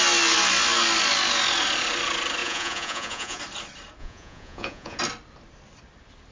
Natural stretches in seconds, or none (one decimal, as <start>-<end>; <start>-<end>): 0.0-2.4; 3.4-4.0; 5.0-6.3